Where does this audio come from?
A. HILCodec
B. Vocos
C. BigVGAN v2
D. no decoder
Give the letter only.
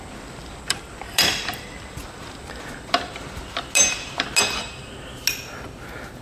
D